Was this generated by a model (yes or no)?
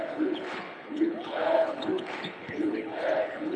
yes